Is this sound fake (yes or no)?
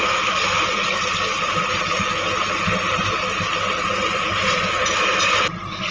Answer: no